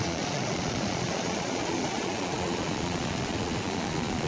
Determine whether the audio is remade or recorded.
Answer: remade